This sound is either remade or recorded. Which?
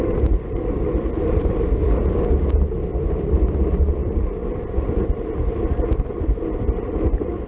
recorded